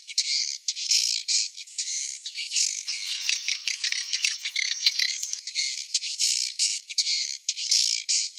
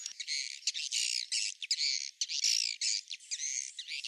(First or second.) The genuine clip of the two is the second